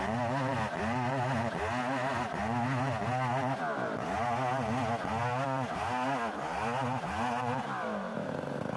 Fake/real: real